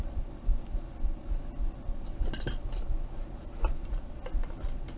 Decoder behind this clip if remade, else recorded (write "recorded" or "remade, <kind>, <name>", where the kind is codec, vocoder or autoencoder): remade, vocoder, BigVGAN v2